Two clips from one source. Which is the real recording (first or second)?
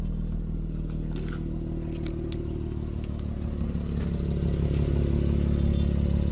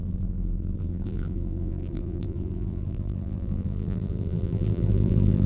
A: first